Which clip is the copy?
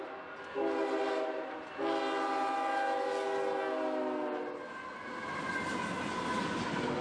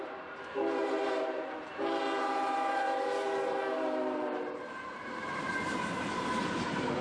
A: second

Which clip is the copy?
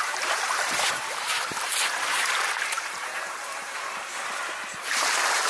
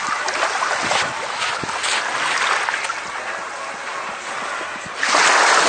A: first